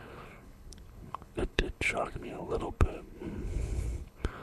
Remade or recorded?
remade